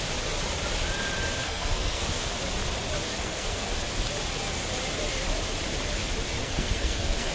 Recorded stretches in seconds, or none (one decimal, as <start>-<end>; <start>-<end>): 0.0-1.4; 2.3-3.0; 3.7-6.4